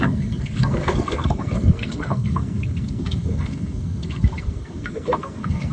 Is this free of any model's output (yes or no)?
no